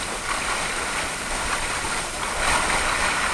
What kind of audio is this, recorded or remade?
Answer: remade